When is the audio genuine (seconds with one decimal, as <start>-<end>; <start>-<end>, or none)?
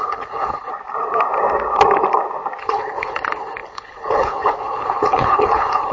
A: 0.7-2.6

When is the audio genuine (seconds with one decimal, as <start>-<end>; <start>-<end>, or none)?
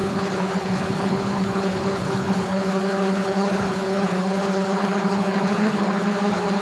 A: none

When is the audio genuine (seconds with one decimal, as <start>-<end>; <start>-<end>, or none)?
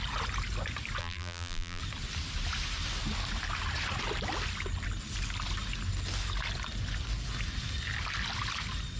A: 0.0-1.0; 1.8-9.0